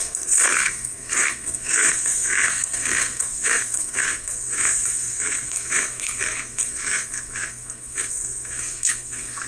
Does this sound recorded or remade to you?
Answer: remade